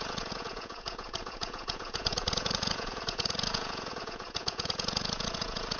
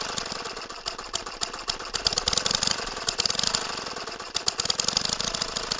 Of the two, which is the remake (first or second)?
first